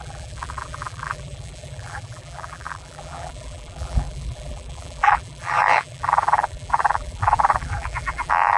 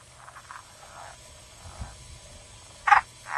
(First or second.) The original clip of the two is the second